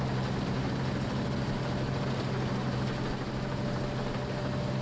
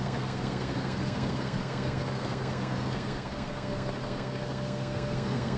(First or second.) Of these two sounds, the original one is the first